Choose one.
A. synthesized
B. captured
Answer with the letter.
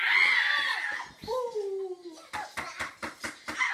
B